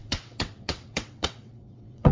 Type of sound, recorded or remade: remade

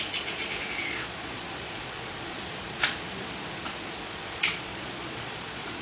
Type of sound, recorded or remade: remade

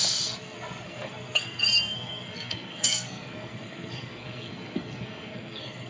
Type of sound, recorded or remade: remade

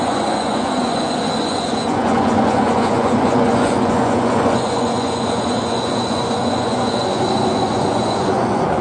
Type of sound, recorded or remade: remade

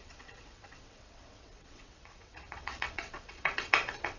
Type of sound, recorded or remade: remade